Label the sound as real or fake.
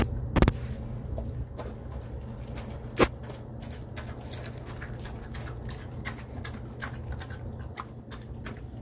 real